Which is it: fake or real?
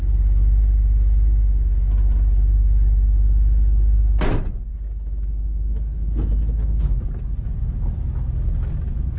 real